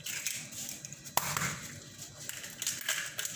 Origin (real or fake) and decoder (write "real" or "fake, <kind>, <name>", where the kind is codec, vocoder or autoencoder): real